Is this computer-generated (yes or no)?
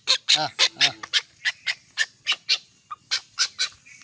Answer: no